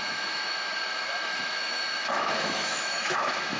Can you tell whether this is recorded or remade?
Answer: remade